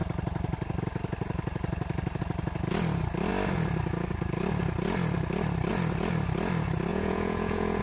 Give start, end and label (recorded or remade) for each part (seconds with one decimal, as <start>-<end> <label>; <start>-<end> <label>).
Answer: 0.0-6.9 recorded; 6.9-7.8 remade